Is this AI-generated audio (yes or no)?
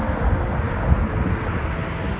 no